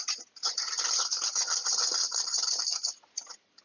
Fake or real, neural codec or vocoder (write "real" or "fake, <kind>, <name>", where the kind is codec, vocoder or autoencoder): real